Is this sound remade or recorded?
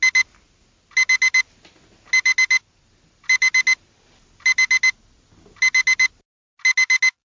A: recorded